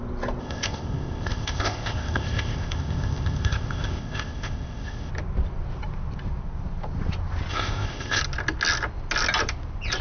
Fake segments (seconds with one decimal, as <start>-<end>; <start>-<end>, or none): 0.4-5.1; 7.5-8.2